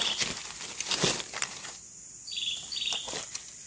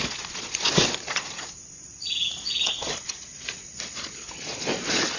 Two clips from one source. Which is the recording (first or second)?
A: first